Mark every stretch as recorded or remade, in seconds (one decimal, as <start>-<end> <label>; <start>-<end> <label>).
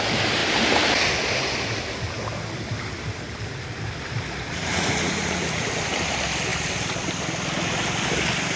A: 0.0-4.6 recorded; 4.6-5.7 remade; 5.7-8.6 recorded